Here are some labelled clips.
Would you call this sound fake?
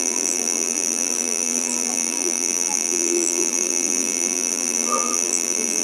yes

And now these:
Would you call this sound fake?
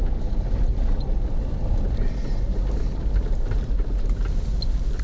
no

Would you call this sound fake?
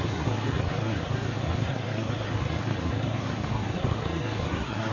yes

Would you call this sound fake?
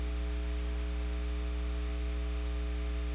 no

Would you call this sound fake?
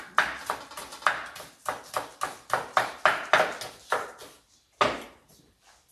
no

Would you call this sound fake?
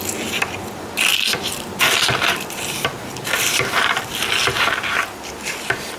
no